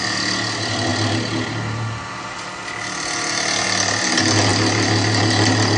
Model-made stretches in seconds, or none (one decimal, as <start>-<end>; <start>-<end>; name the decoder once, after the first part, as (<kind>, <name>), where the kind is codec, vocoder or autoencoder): none